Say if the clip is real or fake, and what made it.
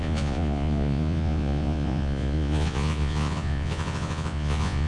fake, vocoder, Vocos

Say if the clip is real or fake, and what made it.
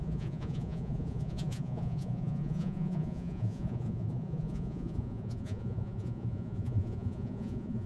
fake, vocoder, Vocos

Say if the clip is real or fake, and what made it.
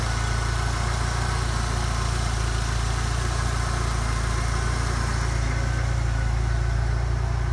real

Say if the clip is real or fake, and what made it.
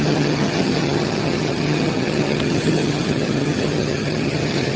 fake, vocoder, HiFi-GAN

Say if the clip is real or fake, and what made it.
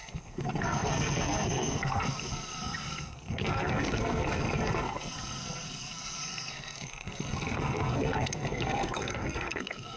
fake, codec, SNAC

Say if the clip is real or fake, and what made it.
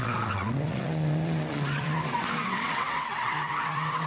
fake, vocoder, WaveNeXt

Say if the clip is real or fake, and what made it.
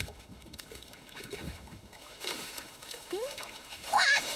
fake, autoencoder, DAC-VAE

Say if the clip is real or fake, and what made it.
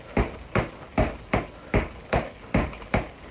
real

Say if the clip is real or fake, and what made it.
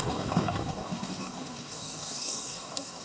fake, codec, DAC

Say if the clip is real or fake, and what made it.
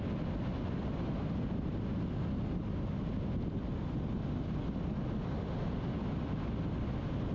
real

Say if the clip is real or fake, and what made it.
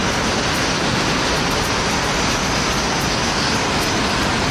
real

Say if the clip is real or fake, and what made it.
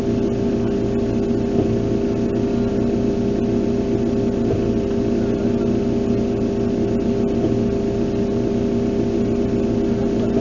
real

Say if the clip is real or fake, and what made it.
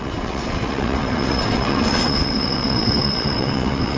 fake, vocoder, WaveNeXt